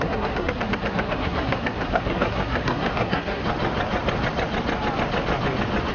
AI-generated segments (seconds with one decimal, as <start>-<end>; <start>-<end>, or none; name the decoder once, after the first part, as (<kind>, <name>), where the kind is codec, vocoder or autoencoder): 0.0-3.4 (codec, SNAC)

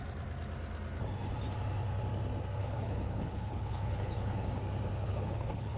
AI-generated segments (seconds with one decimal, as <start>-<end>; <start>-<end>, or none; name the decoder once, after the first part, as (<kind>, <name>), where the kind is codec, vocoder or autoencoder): 2.6-4.5 (codec, HILCodec); 5.1-5.8

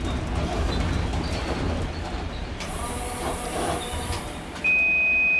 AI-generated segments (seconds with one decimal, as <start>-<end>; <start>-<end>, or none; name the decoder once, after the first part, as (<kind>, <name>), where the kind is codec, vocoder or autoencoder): 2.4-4.6 (vocoder, BigVGAN v2)

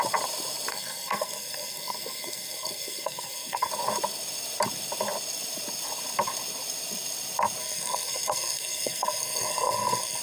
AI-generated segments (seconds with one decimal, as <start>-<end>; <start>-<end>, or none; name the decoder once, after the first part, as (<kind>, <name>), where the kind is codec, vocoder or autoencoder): 0.7-3.7 (codec, SNAC); 7.6-10.2

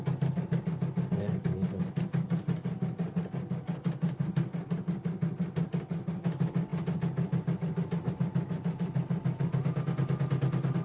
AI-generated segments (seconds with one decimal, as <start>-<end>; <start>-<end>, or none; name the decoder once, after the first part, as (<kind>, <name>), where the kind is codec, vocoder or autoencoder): none

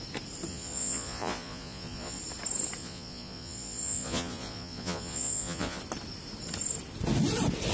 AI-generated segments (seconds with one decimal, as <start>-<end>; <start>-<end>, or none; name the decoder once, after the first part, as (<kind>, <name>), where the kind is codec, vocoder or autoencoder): 0.5-2.2 (vocoder, Vocos); 2.8-5.8

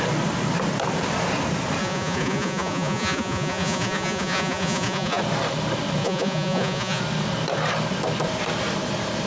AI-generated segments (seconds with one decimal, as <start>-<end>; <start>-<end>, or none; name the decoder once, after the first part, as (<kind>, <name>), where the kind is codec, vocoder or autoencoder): 1.8-5.2 (vocoder, Vocos); 6.0-7.0

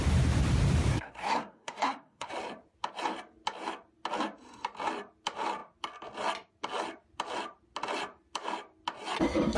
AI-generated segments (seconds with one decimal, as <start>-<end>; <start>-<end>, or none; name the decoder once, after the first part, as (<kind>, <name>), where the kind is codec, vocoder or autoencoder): 0.9-2.3 (codec, SNAC)